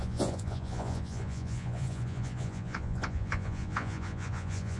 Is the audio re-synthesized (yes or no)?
yes